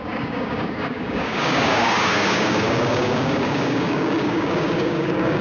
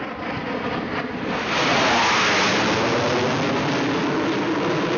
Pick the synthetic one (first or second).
first